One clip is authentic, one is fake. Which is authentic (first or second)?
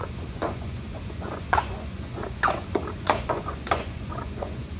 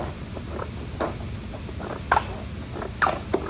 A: second